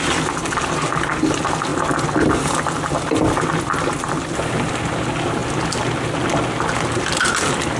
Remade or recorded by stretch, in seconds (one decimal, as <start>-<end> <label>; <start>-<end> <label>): 0.0-7.8 recorded